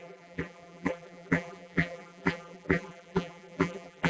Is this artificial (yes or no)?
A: yes